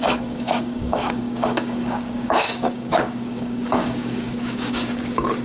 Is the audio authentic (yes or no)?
no